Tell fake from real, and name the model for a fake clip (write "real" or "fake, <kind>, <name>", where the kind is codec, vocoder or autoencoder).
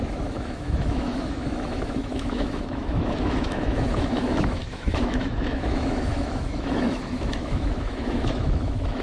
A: fake, autoencoder, DAC-VAE